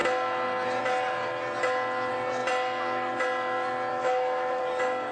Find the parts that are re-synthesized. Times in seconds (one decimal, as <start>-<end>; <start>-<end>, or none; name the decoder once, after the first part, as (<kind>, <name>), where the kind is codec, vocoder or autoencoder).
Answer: 3.9-4.6 (autoencoder, DAC-VAE)